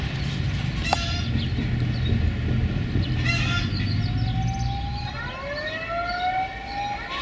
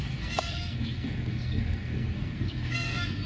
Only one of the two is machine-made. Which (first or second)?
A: second